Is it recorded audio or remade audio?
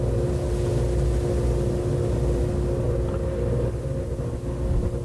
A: recorded